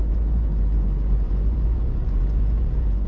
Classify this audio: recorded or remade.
remade